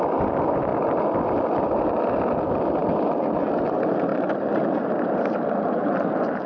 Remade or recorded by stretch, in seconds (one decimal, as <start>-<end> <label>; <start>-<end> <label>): 0.0-0.7 recorded; 0.7-1.8 remade; 1.8-2.8 recorded; 2.8-3.6 remade; 3.6-4.1 recorded; 4.1-6.5 remade